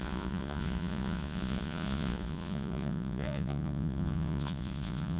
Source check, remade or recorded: remade